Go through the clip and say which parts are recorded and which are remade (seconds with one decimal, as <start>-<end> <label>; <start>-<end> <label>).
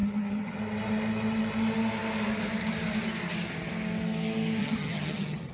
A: 0.0-0.6 remade; 0.6-4.6 recorded; 4.6-5.5 remade